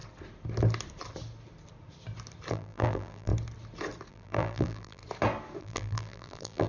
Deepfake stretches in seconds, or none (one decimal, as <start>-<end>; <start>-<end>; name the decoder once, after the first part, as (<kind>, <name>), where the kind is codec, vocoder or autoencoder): 2.5-3.3 (vocoder, BigVGAN v2); 4.1-5.0; 5.6-6.7